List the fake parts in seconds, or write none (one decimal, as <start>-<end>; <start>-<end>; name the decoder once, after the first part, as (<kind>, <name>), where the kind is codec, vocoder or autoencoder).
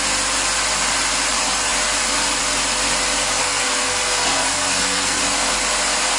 3.4-5.2 (codec, SNAC)